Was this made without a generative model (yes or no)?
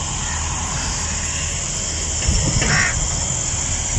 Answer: yes